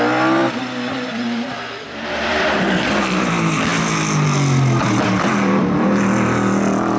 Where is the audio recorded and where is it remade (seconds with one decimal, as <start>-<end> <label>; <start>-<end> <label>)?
0.0-0.4 recorded; 0.4-3.3 remade; 3.3-7.0 recorded